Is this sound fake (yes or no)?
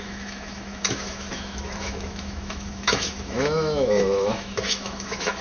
yes